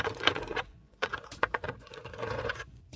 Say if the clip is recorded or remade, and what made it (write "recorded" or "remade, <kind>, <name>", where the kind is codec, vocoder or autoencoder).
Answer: remade, vocoder, Vocos